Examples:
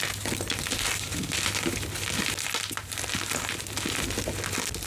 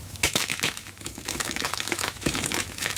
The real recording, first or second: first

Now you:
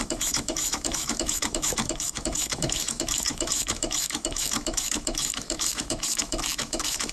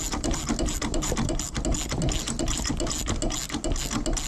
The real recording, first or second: second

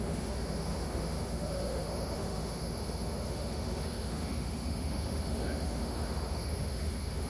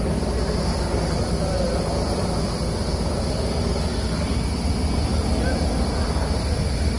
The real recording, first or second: second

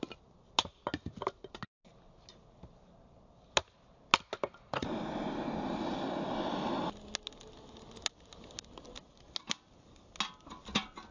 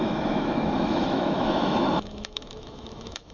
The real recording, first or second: first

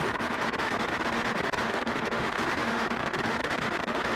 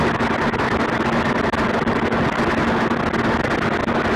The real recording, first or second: second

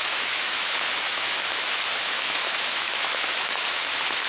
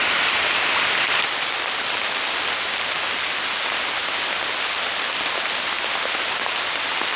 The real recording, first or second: second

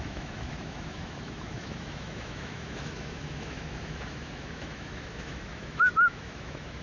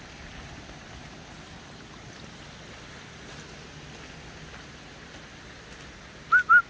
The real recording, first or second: second